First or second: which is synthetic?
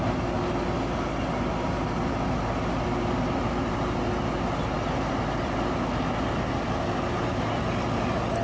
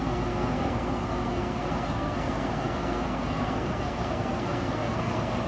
second